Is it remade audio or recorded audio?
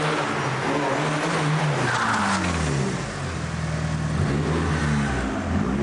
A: recorded